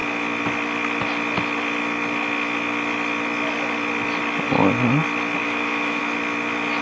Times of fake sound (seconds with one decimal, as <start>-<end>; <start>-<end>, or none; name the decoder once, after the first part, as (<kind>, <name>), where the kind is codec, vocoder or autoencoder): 5.4-6.0 (autoencoder, DAC-VAE)